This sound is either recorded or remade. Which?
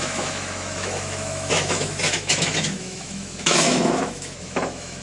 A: remade